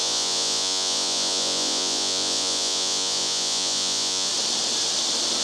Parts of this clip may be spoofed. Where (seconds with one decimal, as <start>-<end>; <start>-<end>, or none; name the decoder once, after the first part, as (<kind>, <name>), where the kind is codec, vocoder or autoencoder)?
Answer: 0.0-4.3 (vocoder, Vocos)